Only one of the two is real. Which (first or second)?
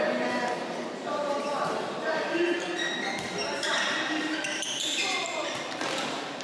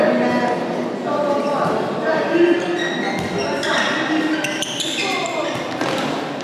second